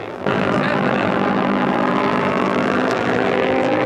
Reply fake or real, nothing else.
fake